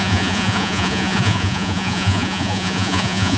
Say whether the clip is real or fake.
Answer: fake